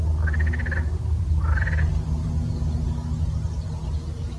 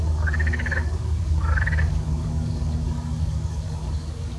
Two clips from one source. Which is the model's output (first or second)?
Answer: second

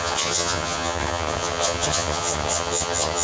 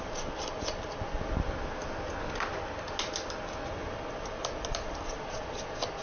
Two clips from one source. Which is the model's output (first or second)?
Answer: first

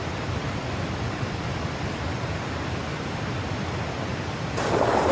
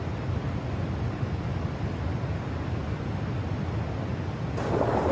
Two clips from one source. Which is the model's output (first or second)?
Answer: first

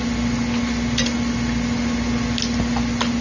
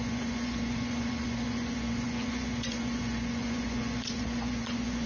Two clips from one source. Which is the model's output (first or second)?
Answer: second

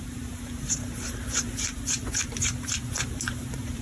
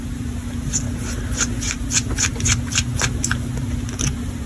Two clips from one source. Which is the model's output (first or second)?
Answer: first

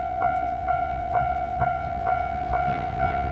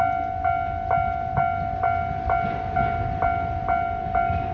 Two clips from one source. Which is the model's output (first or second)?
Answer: first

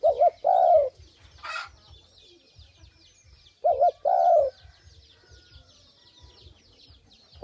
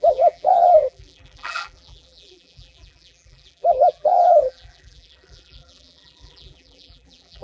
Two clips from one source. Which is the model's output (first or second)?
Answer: second